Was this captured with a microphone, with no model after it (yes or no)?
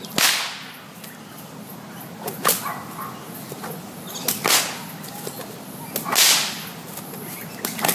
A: yes